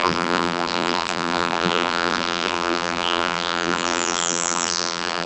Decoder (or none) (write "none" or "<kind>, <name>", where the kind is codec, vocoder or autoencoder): vocoder, BigVGAN v2